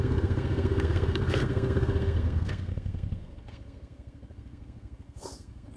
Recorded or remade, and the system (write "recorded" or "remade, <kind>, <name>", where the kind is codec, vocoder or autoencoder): remade, codec, SNAC